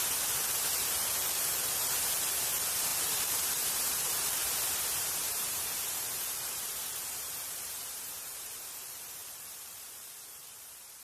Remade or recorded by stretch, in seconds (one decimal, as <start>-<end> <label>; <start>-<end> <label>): 0.0-0.7 recorded; 0.7-4.4 remade; 4.4-5.2 recorded; 5.2-11.0 remade